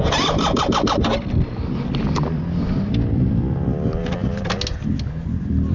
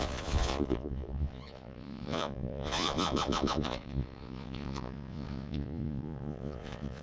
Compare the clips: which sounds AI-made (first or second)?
second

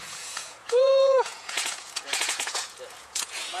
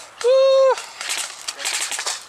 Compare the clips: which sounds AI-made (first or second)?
first